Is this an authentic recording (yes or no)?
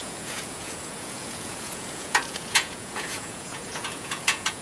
no